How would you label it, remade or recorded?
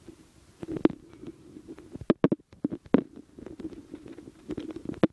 recorded